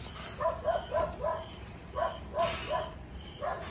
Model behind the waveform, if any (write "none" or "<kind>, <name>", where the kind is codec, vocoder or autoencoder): none